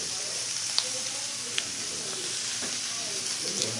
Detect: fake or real fake